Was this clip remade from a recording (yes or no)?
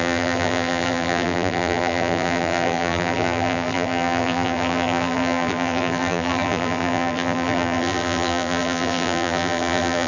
yes